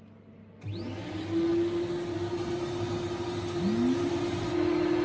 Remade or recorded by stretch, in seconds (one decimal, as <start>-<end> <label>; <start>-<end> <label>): 0.0-5.0 recorded